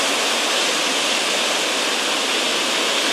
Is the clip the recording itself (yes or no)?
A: yes